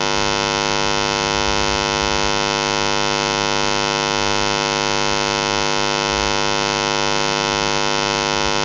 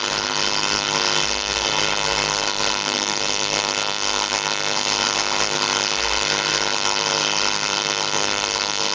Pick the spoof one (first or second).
second